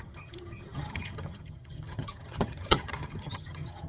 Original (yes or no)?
no